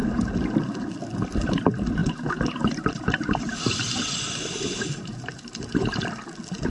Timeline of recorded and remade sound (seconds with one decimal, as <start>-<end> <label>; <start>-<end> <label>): 0.0-0.7 remade; 0.7-2.0 recorded; 2.0-6.0 remade; 6.0-6.7 recorded